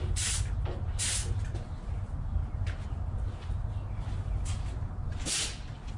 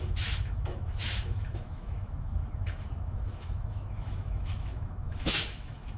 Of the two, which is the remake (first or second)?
second